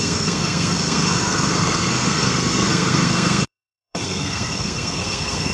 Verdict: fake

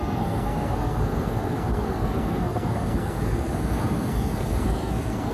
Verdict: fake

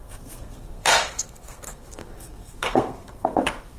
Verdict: fake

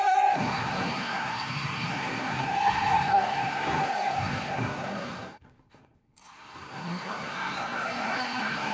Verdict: fake